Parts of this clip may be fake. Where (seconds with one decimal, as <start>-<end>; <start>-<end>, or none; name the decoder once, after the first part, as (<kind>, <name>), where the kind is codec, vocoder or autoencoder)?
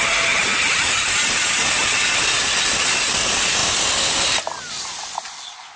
none